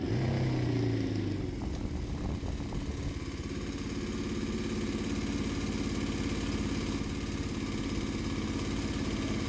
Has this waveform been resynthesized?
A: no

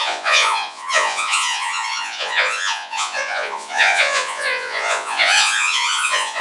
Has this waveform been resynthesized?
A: yes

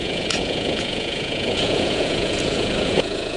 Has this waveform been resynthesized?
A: yes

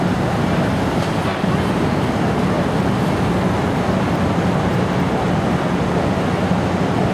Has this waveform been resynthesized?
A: no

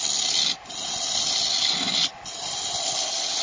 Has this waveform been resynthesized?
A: no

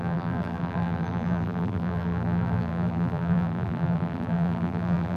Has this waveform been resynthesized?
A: yes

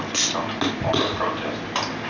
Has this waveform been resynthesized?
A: no